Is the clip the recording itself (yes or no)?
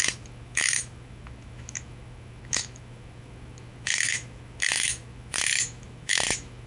no